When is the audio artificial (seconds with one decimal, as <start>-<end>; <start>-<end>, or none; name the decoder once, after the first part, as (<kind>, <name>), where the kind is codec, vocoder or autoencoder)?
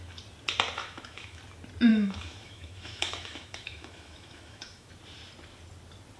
0.8-1.4 (autoencoder, DAC-VAE); 1.9-4.9